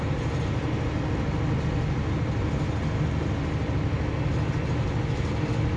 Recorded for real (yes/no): yes